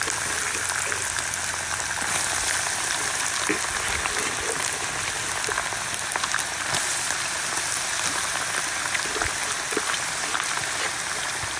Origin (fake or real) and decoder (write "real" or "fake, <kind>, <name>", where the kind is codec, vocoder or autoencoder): real